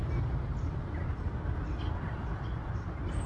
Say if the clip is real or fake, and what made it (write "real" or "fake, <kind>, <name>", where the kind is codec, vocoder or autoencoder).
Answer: real